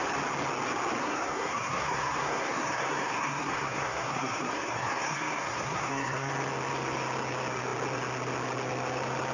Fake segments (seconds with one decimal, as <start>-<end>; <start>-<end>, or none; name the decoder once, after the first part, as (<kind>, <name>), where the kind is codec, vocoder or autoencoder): 1.0-6.3 (codec, SNAC)